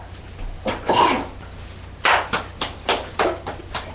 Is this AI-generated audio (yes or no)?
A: no